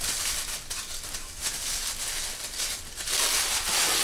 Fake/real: real